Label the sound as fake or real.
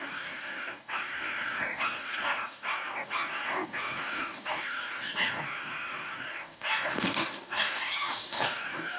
fake